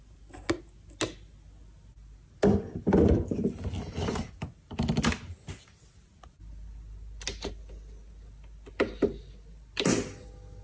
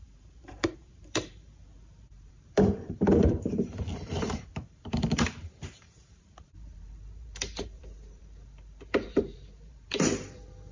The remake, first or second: second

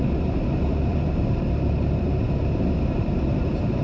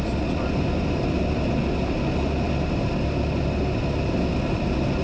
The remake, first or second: first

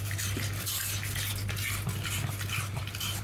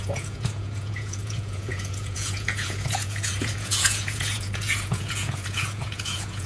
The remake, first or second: second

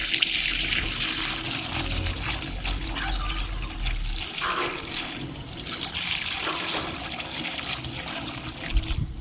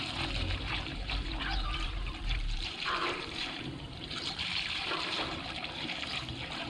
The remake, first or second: second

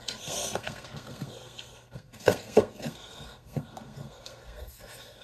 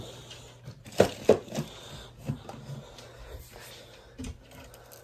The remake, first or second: first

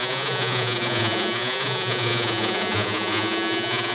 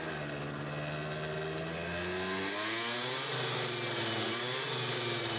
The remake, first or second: first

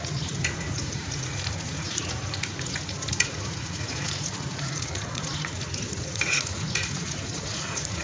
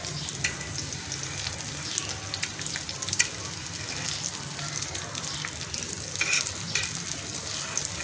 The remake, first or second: first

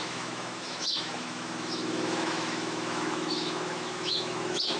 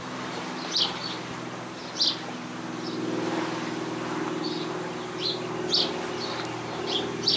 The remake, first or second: first